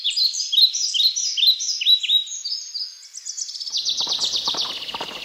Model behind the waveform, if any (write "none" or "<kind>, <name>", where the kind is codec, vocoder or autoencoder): none